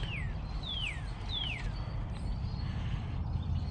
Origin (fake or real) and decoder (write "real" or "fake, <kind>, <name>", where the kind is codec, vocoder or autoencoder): real